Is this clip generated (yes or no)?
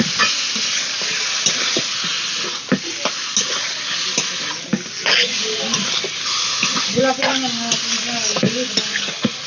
no